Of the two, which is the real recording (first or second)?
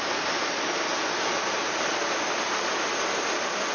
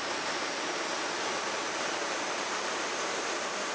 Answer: first